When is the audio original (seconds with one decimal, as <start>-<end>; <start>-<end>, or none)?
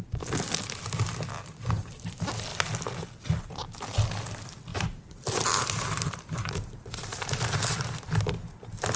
0.0-4.7; 8.2-9.0